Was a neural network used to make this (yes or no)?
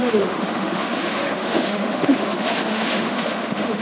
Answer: yes